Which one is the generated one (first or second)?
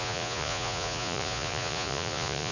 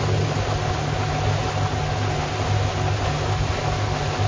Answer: first